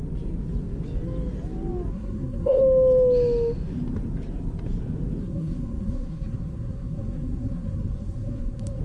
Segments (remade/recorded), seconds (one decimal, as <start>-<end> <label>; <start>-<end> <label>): 0.0-1.9 recorded; 1.9-2.6 remade; 2.6-5.2 recorded; 5.2-8.8 remade